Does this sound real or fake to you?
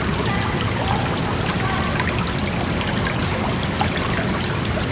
real